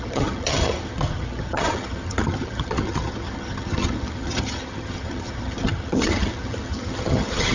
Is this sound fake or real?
fake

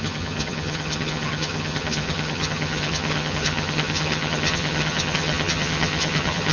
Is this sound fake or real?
fake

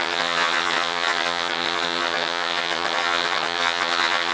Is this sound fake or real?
fake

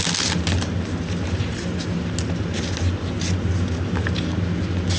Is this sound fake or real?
real